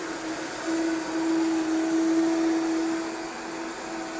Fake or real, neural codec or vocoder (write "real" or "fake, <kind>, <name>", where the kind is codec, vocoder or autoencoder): real